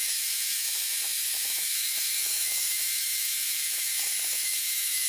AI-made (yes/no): yes